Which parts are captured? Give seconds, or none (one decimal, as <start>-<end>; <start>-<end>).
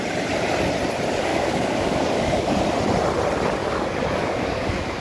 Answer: 0.0-1.3; 2.6-3.6